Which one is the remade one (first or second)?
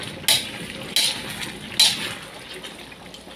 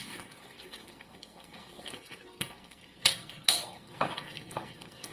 second